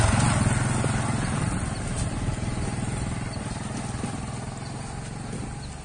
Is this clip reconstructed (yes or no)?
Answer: no